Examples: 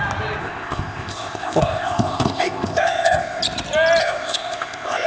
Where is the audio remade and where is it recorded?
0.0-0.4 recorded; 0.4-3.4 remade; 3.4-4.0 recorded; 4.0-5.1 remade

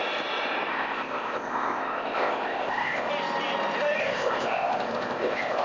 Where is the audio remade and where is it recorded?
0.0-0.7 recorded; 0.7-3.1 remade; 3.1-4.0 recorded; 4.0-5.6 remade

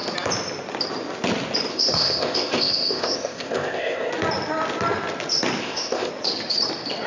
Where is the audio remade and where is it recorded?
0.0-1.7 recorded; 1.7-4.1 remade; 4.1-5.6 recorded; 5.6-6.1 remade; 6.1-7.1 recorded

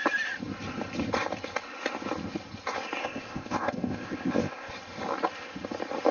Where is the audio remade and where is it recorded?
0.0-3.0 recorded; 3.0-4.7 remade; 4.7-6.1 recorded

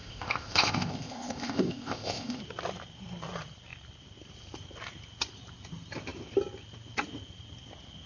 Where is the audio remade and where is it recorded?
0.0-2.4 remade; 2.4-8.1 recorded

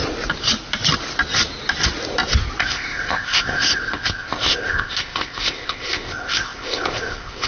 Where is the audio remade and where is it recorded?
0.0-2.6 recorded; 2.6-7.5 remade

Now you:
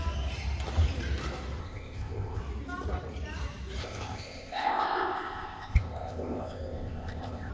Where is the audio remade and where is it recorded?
0.0-1.6 recorded; 1.6-2.4 remade; 2.4-3.8 recorded; 3.8-7.5 remade

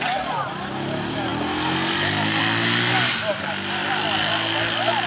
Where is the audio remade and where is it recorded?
0.0-5.1 recorded